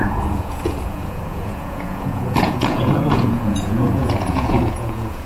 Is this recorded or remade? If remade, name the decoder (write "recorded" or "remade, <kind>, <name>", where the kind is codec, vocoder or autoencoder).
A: remade, vocoder, Vocos